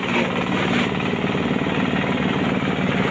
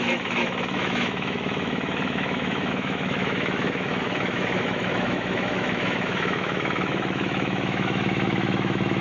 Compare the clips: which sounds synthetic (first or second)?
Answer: second